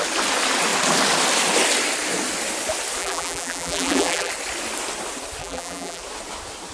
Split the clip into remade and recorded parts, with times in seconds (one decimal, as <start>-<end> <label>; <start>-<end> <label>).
0.0-3.0 recorded; 3.0-4.3 remade; 4.3-5.4 recorded; 5.4-6.0 remade; 6.0-6.7 recorded